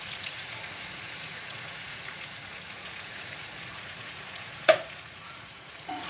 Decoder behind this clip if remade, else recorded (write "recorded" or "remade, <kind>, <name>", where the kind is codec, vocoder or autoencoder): remade, vocoder, Vocos